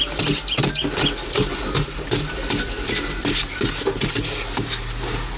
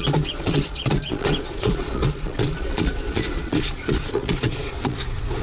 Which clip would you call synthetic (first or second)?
second